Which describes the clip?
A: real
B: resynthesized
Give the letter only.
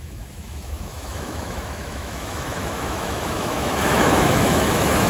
B